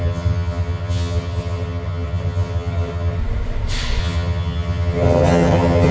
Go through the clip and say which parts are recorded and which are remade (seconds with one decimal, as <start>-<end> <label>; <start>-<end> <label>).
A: 0.0-3.2 remade; 3.2-4.0 recorded; 4.0-5.9 remade